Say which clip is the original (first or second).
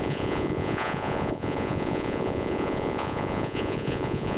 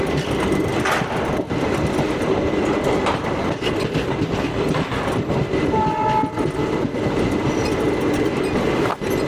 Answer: second